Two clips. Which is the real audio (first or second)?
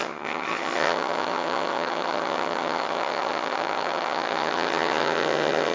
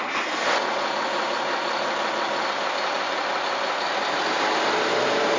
second